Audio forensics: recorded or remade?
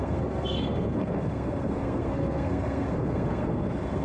remade